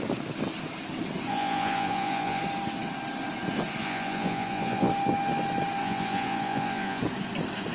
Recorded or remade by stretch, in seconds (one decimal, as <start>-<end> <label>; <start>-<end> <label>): 0.0-1.3 recorded; 1.3-2.4 remade; 2.4-3.8 recorded; 3.8-4.9 remade; 4.9-5.8 recorded; 5.8-7.0 remade; 7.0-7.7 recorded